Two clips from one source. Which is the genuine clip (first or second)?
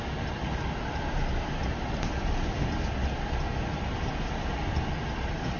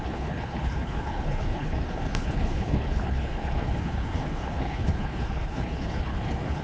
first